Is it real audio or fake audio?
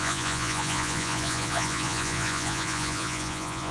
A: fake